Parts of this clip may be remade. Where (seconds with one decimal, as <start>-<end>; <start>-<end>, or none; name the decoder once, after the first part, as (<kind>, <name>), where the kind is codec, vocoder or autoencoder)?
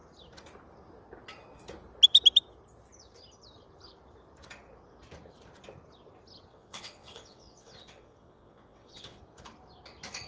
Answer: 6.5-9.2 (vocoder, WaveNeXt)